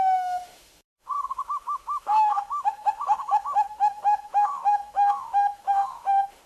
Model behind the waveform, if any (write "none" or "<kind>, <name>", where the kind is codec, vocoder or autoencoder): autoencoder, DAC-VAE